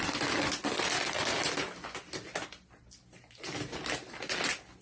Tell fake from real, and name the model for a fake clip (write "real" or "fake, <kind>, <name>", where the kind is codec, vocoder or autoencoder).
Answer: real